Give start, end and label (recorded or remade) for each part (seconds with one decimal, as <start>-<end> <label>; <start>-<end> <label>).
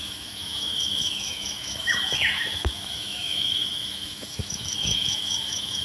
0.0-5.8 remade